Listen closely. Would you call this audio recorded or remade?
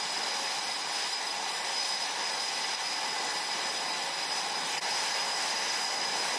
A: recorded